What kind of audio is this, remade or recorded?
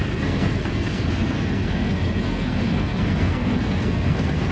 remade